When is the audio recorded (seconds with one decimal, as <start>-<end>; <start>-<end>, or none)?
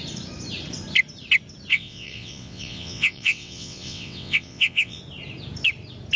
0.0-1.7; 5.0-6.2